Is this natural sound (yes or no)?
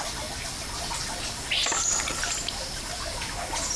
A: yes